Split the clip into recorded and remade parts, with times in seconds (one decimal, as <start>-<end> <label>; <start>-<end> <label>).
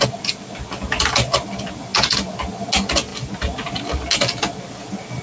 0.0-5.2 recorded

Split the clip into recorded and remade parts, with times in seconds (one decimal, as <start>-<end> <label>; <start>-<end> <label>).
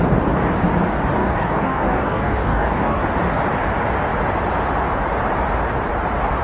0.0-1.2 recorded; 1.2-3.0 remade; 3.0-6.4 recorded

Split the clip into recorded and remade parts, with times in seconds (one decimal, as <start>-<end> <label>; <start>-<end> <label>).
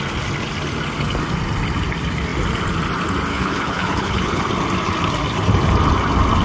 0.0-3.3 recorded; 3.3-4.4 remade; 4.4-6.4 recorded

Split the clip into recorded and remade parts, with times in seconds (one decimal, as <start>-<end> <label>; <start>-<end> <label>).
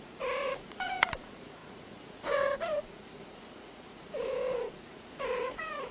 0.0-5.9 remade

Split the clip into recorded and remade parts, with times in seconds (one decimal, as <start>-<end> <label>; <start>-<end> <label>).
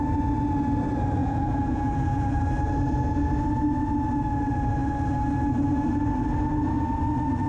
0.0-1.2 recorded; 1.2-2.4 remade; 2.4-7.5 recorded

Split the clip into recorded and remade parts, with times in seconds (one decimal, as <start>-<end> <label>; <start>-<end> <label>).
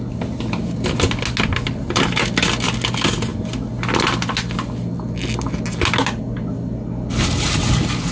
0.0-8.1 recorded